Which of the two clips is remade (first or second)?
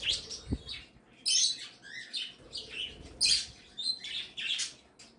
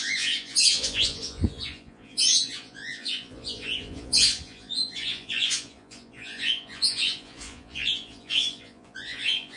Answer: second